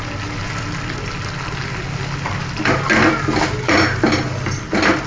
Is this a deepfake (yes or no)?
no